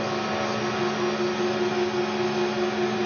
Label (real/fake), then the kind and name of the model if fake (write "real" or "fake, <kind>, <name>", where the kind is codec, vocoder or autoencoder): real